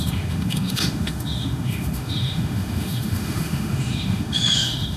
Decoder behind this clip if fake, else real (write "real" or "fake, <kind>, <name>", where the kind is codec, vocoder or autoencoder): fake, autoencoder, DAC-VAE